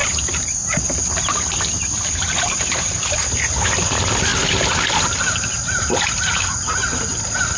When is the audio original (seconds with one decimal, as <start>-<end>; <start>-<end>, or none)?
0.0-7.6

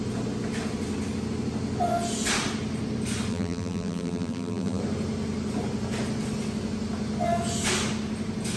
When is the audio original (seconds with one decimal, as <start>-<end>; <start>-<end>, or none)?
0.0-3.3; 4.8-8.6

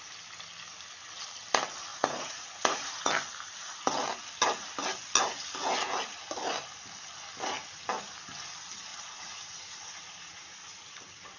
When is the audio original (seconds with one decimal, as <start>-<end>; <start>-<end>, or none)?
0.0-1.9; 3.1-8.9; 11.0-11.4